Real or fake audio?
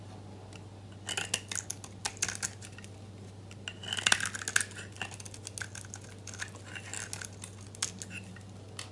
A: real